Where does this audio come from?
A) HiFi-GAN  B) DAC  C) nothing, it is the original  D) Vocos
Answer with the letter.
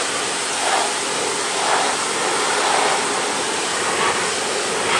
C